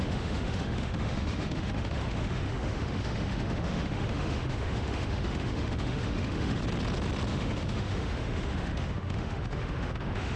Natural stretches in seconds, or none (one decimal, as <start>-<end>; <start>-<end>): 6.6-7.3